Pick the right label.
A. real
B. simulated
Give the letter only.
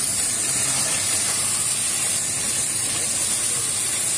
A